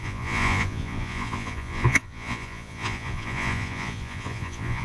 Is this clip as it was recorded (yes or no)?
no